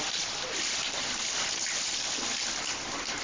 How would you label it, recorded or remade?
recorded